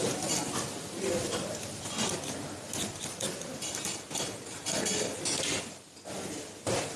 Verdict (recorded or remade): recorded